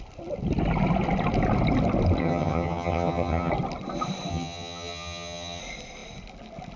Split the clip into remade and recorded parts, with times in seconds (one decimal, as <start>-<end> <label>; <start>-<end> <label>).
0.0-2.2 recorded; 2.2-3.5 remade; 3.5-4.3 recorded; 4.3-5.6 remade; 5.6-6.8 recorded